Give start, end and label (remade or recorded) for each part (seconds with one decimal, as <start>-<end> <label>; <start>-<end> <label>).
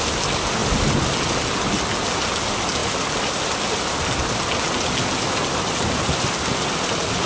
0.0-7.3 recorded